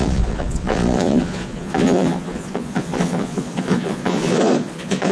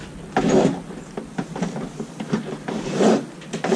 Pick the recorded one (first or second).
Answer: second